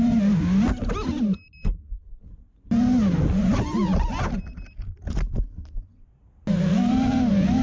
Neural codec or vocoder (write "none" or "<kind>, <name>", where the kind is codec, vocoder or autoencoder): none